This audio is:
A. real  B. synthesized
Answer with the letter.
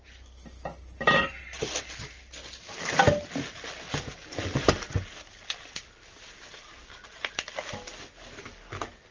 A